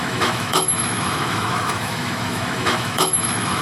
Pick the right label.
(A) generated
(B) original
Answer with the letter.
A